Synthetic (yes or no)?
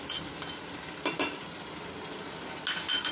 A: no